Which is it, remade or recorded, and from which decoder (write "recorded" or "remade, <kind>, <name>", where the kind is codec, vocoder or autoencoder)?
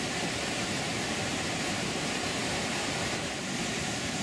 remade, vocoder, BigVGAN v2